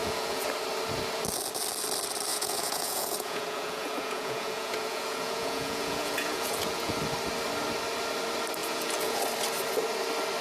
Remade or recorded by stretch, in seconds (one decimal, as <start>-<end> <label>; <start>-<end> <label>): 0.0-0.5 remade; 0.5-2.3 recorded; 2.3-7.0 remade; 7.0-8.6 recorded; 8.6-9.2 remade; 9.2-10.4 recorded